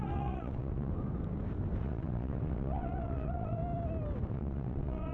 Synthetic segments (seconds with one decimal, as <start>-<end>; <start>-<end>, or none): 0.0-0.9; 1.8-3.6; 4.3-5.1